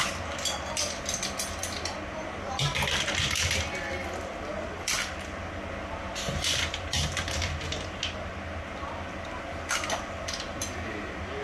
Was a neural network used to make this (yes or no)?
no